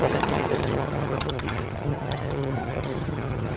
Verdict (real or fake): fake